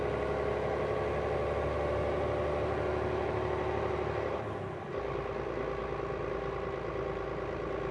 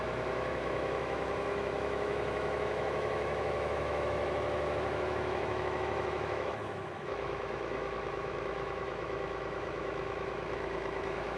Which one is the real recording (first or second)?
first